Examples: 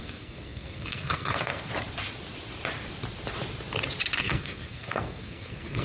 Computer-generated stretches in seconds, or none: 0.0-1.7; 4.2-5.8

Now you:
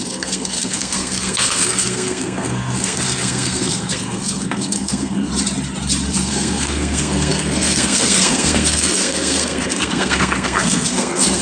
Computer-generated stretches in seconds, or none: 0.0-5.3; 6.1-11.4

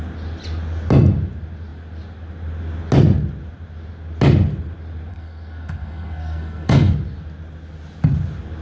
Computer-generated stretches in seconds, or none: 5.1-6.9

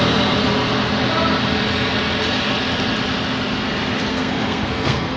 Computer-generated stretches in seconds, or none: 4.1-5.2

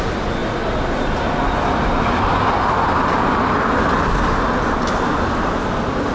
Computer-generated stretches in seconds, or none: none

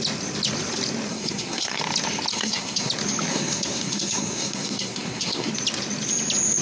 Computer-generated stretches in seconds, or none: 1.1-1.8; 2.3-2.9; 3.3-5.5